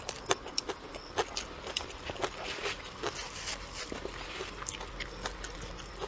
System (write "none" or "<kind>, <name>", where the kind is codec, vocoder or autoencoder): none